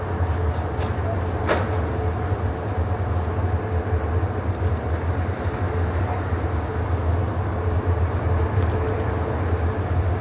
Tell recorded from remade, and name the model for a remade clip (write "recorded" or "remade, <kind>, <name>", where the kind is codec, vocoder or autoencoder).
recorded